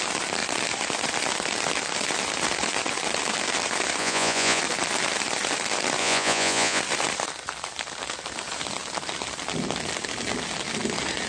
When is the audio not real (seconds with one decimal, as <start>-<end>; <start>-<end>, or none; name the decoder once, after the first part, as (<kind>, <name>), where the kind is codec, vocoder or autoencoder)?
4.0-4.6 (vocoder, Vocos); 6.0-6.8